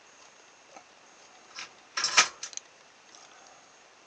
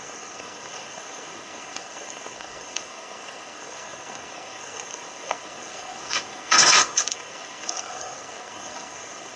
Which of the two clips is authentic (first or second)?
first